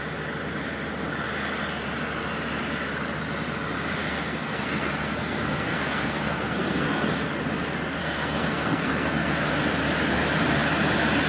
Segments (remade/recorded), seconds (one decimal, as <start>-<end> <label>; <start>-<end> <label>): 0.0-4.0 recorded; 4.0-7.3 remade; 7.3-8.0 recorded; 8.0-9.5 remade; 9.5-11.3 recorded